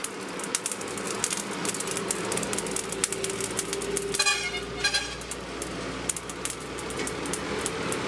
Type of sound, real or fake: real